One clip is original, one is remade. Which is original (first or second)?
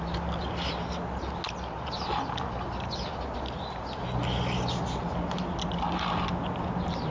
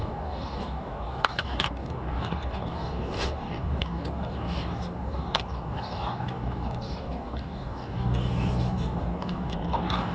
first